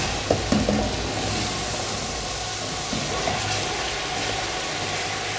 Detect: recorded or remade recorded